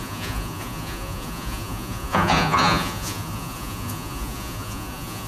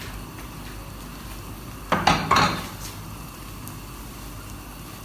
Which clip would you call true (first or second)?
second